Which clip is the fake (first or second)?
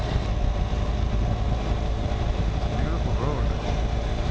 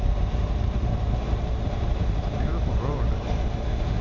second